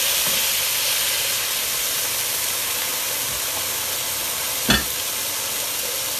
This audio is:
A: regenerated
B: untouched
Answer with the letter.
B